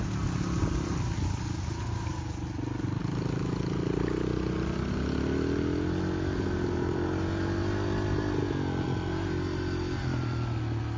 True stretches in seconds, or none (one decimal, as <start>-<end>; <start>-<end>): 0.0-11.0